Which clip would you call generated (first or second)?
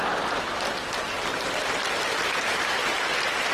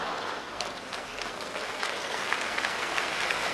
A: second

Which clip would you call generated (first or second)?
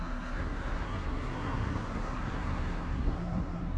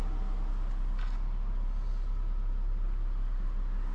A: first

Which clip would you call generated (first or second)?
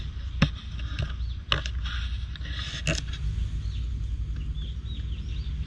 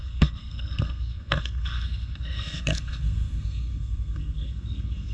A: second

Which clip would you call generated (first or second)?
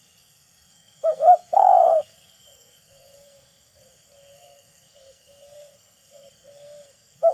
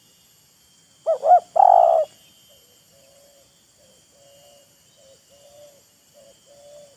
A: first